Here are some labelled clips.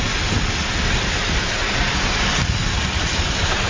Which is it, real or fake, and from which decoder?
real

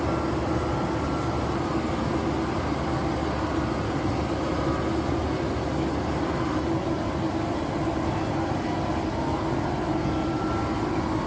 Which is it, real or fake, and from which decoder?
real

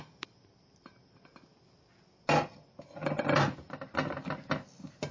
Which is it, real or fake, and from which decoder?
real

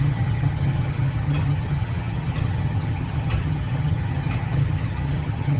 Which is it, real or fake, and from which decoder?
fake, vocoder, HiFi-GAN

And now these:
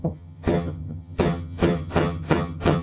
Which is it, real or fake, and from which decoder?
fake, vocoder, HiFi-GAN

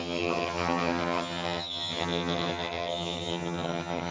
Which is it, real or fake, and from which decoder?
fake, vocoder, HiFi-GAN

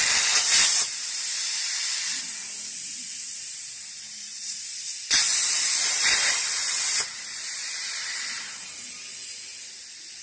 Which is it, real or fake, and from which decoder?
real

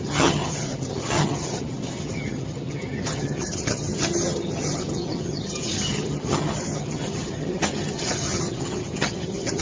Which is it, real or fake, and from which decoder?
fake, vocoder, HiFi-GAN